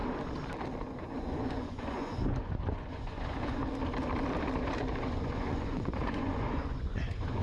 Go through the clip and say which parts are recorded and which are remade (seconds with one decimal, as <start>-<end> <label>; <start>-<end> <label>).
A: 0.0-1.0 recorded; 1.0-3.6 remade; 3.6-5.0 recorded; 5.0-7.4 remade